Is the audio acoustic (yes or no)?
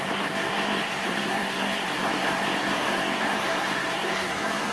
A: no